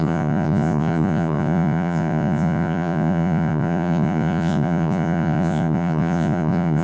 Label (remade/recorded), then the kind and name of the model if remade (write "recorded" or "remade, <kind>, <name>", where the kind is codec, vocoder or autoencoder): remade, vocoder, Vocos